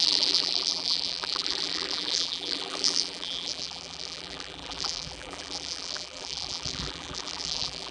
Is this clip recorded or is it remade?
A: remade